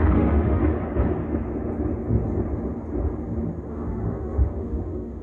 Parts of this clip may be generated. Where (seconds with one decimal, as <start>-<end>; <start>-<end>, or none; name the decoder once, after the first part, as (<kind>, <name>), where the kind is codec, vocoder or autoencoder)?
0.0-0.6 (autoencoder, DAC-VAE); 3.7-5.2